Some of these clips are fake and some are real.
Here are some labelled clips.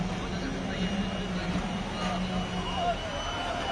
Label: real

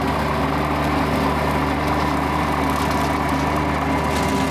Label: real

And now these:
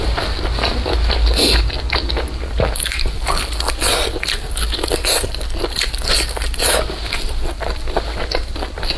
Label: real